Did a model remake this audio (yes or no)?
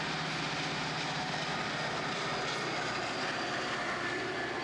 no